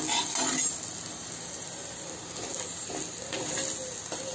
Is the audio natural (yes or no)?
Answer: yes